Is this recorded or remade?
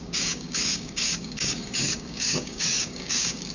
remade